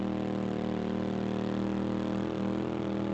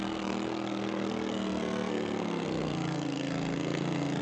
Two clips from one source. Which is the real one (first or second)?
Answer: first